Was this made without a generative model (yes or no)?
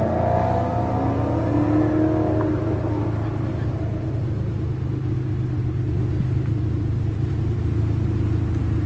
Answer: yes